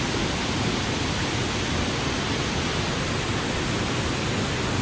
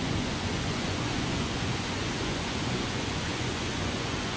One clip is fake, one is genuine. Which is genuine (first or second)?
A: first